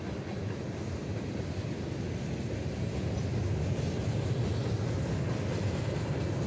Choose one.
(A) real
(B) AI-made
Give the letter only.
A